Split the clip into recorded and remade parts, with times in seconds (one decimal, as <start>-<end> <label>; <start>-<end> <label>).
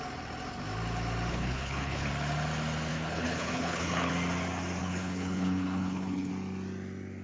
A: 0.0-1.3 recorded; 1.3-2.1 remade; 2.1-2.9 recorded; 2.9-4.1 remade; 4.1-4.8 recorded; 4.8-6.3 remade; 6.3-7.2 recorded